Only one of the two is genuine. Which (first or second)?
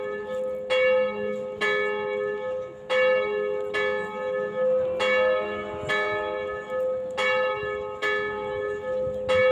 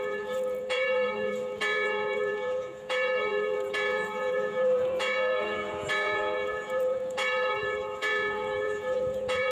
first